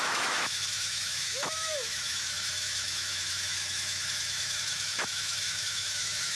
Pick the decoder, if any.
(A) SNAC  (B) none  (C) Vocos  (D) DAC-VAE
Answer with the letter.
D